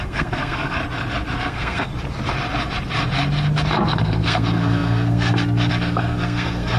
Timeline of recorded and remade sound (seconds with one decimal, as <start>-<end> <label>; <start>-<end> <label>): 0.0-0.8 remade; 0.8-1.4 recorded; 1.4-1.9 remade; 1.9-3.8 recorded; 3.8-6.8 remade